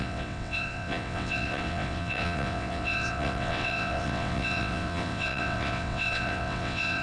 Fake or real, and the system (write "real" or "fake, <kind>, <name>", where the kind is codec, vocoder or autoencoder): fake, vocoder, WaveNeXt